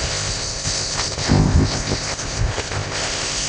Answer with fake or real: fake